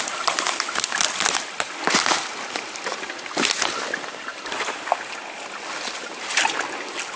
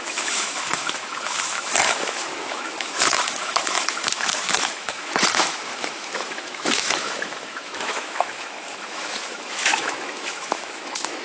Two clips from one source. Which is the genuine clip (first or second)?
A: first